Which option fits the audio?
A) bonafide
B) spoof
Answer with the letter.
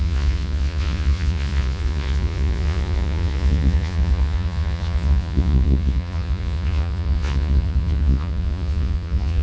B